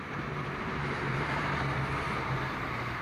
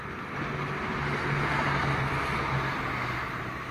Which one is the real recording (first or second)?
second